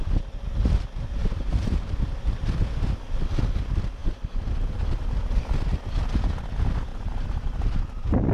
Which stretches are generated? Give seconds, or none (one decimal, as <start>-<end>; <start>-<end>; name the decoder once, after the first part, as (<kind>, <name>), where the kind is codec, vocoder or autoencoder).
1.2-2.0 (vocoder, BigVGAN v2); 6.9-7.8